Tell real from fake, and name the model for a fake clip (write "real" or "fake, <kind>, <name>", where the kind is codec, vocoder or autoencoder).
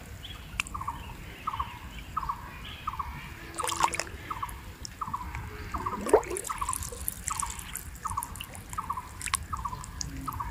real